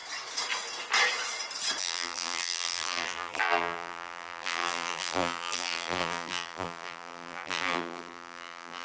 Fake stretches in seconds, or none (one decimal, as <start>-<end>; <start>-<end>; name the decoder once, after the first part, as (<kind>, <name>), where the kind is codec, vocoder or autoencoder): 1.8-8.8 (vocoder, BigVGAN v2)